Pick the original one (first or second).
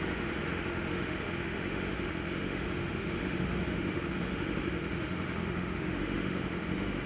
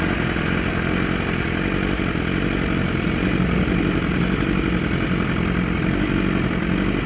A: second